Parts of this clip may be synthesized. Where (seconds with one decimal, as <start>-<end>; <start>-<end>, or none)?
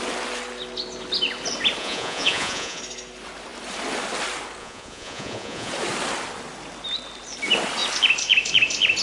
1.8-2.8; 4.6-5.7